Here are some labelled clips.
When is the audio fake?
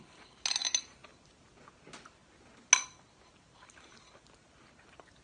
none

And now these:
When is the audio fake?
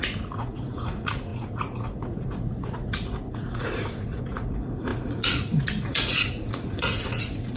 0.0-7.6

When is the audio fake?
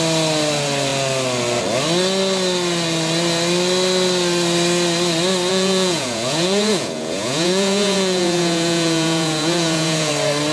5.5-10.1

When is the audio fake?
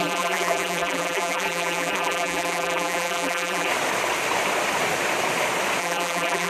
0.0-3.7; 5.8-6.5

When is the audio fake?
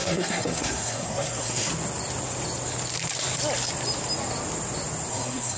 0.0-1.7; 5.1-5.6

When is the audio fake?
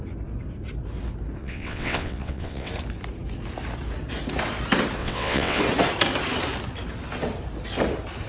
1.4-2.7; 5.0-5.6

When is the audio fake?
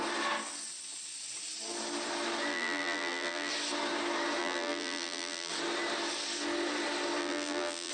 2.5-3.5; 4.4-5.5; 7.2-7.9